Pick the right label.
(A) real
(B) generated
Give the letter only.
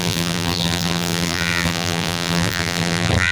B